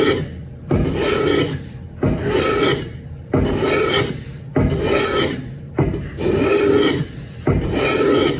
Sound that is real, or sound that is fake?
real